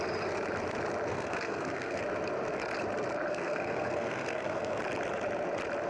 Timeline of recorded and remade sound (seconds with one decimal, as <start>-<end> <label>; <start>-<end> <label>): 0.0-1.1 recorded; 1.1-2.0 remade; 2.0-3.3 recorded; 3.3-4.8 remade; 4.8-5.9 recorded